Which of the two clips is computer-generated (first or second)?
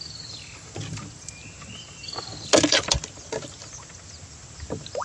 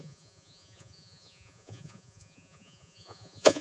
second